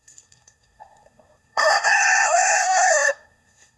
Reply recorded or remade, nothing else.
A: remade